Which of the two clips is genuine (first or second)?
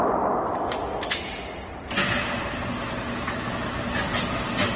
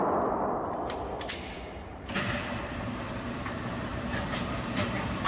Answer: first